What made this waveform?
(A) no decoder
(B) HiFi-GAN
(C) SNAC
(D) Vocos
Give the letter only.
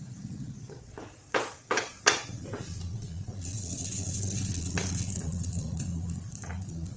D